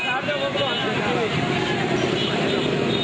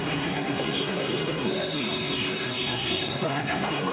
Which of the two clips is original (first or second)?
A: first